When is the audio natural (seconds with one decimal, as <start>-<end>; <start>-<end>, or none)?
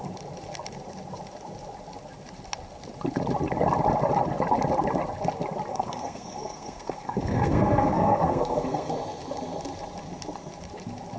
0.0-5.7; 8.9-11.2